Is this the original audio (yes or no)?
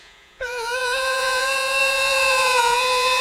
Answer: no